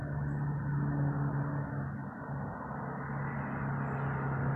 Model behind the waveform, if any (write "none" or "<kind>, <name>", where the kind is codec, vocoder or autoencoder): none